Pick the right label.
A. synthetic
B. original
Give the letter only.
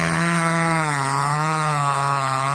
A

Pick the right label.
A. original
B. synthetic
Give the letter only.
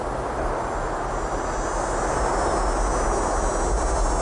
A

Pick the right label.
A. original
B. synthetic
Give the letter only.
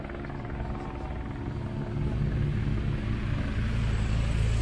A